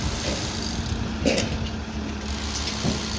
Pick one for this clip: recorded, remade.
recorded